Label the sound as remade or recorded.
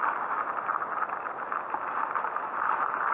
remade